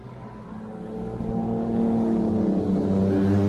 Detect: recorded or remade recorded